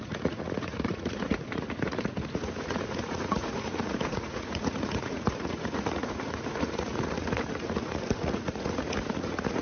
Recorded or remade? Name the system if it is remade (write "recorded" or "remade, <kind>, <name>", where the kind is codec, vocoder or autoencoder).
remade, vocoder, Vocos